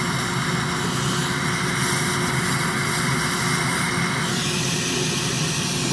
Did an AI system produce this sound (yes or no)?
no